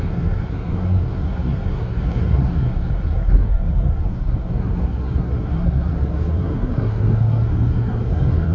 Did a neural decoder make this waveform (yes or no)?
yes